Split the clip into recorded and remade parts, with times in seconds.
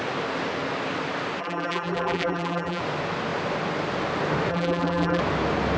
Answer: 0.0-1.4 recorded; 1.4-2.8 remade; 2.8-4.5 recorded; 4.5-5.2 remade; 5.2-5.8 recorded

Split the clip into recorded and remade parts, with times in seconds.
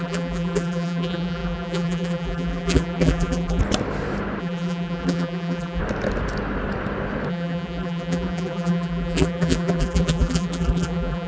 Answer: 0.0-3.6 remade; 3.6-4.4 recorded; 4.4-5.8 remade; 5.8-7.3 recorded; 7.3-11.3 remade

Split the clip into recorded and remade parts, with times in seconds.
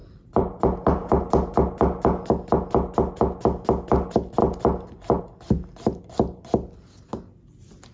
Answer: 0.0-1.3 remade; 1.3-7.9 recorded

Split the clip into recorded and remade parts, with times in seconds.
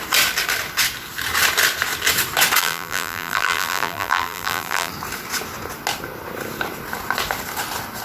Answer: 0.0-2.6 recorded; 2.6-4.9 remade; 4.9-8.0 recorded